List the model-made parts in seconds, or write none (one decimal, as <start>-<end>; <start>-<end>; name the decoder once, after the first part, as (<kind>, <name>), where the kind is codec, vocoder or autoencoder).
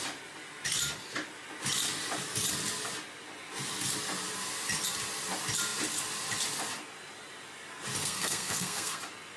8.0-9.0 (codec, SNAC)